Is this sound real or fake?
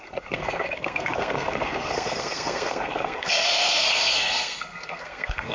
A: fake